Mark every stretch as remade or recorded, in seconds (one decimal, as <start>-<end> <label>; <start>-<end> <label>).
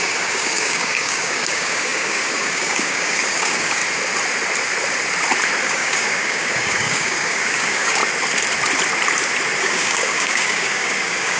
0.0-3.8 remade; 3.8-5.6 recorded; 5.6-8.0 remade; 8.0-9.6 recorded; 9.6-11.4 remade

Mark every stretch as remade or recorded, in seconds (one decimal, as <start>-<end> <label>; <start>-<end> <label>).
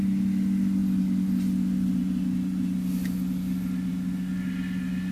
0.0-5.1 recorded